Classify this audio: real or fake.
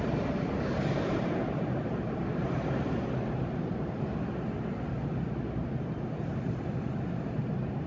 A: real